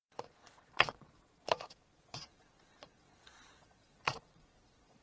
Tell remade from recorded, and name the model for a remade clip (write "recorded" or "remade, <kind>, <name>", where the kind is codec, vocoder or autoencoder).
remade, vocoder, Vocos